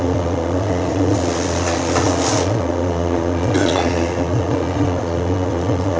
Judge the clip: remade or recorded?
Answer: remade